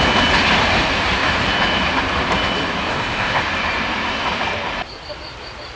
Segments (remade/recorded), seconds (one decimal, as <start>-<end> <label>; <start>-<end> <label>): 0.0-2.9 recorded; 2.9-3.4 remade; 3.4-5.8 recorded